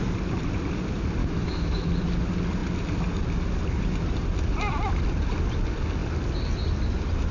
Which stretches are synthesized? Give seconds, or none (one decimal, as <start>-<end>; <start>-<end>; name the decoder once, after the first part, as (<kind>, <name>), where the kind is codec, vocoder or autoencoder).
1.2-1.9 (autoencoder, DAC-VAE)